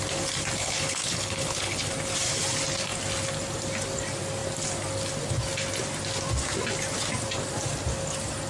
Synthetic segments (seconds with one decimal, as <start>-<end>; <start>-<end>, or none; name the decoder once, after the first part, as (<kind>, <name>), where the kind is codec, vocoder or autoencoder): 0.6-1.9 (codec, HILCodec)